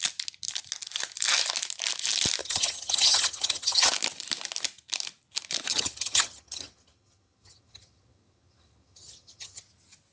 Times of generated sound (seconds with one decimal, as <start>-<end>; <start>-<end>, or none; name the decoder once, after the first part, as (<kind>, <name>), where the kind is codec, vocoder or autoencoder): 2.4-3.9 (vocoder, HiFi-GAN); 5.7-9.6